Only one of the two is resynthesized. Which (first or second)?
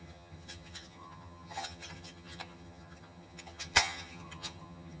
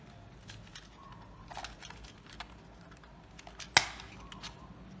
first